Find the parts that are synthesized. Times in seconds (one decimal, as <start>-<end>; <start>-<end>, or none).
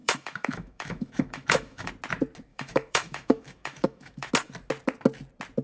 0.0-1.9; 2.5-4.3